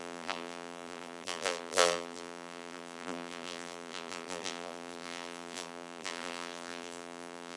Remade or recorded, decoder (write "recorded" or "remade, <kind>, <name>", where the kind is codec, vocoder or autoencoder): remade, vocoder, BigVGAN v2